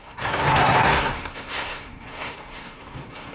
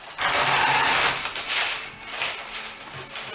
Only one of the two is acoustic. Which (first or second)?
second